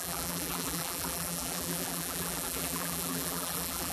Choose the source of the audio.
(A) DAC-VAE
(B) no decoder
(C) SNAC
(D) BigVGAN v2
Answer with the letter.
D